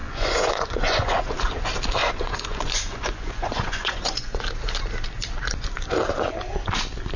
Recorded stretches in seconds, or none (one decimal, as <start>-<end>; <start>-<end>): 1.2-2.0; 4.4-7.2